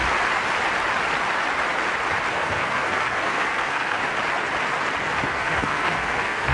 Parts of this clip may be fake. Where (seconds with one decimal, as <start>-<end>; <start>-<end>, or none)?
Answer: 2.3-4.0; 5.0-6.5